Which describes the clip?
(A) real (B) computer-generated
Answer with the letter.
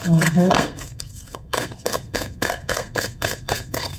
B